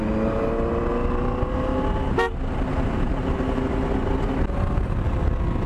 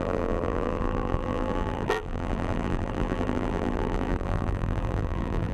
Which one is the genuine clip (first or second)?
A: first